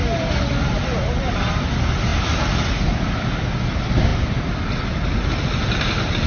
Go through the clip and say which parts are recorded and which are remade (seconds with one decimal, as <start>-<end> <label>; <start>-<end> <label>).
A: 0.0-6.3 recorded